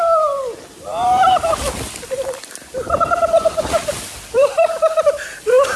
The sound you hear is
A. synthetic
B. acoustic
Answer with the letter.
A